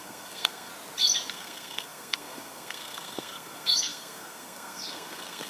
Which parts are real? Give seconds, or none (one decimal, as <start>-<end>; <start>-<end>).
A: 0.7-1.3